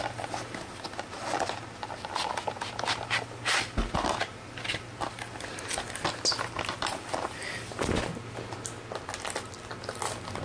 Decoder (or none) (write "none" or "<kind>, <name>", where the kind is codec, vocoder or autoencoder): none